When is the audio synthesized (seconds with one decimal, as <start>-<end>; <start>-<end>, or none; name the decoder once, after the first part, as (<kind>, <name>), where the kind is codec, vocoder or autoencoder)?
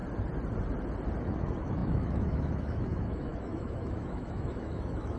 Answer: 1.2-5.2 (autoencoder, DAC-VAE)